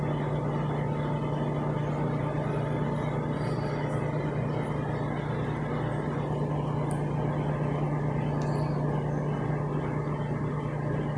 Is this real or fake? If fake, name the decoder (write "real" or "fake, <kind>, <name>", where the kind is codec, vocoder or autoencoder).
real